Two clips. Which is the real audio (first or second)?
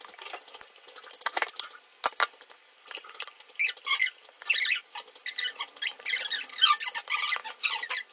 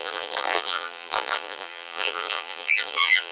first